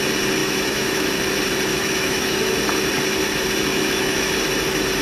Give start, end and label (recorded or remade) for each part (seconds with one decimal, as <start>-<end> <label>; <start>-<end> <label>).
0.0-0.4 recorded; 0.4-1.2 remade; 1.2-1.7 recorded; 1.7-2.4 remade; 2.4-3.7 recorded; 3.7-4.3 remade; 4.3-5.0 recorded